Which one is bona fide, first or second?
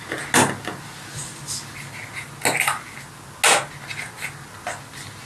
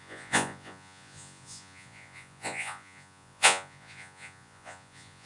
first